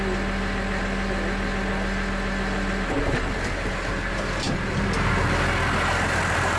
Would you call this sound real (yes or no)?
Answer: yes